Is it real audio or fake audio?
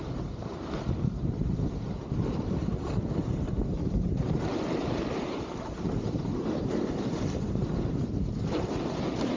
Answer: fake